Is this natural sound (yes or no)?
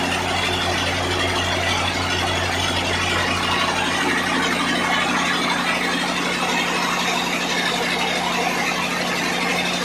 yes